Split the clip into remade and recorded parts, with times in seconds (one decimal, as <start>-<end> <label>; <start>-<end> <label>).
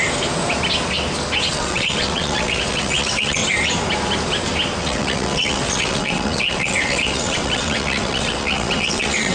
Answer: 0.0-1.5 recorded; 1.5-3.4 remade; 3.4-4.8 recorded; 4.8-9.3 remade